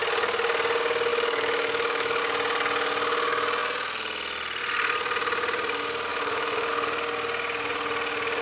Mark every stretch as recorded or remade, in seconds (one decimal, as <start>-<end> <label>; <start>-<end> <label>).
0.0-1.1 recorded; 1.1-2.2 remade; 2.2-6.1 recorded; 6.1-6.7 remade; 6.7-8.4 recorded

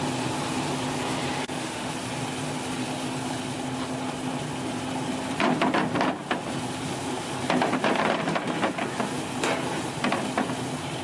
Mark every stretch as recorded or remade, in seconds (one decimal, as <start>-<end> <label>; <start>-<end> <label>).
0.0-1.4 recorded; 1.4-1.9 remade; 1.9-11.0 recorded